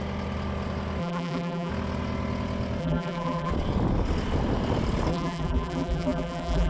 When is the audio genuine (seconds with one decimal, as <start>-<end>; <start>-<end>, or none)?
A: 0.0-1.0; 1.7-2.8; 3.5-5.1